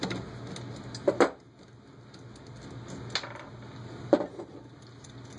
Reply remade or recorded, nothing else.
recorded